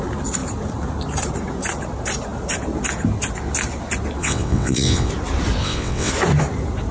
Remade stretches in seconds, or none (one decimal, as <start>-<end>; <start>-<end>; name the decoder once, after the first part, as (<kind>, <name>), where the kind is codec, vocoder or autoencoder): 4.2-5.1 (vocoder, WaveNeXt); 5.6-6.1